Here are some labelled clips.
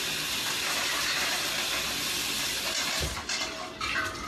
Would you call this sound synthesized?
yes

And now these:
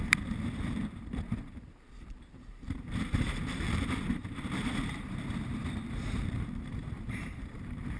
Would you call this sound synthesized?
yes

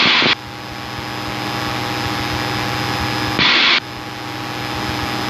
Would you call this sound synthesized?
no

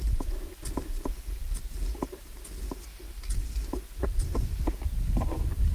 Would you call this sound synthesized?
no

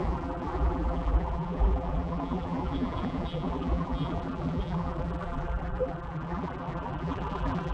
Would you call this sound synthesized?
yes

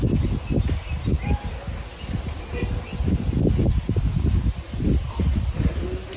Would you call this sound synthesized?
no